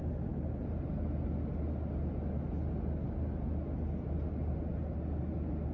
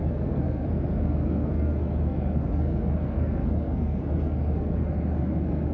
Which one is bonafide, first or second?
first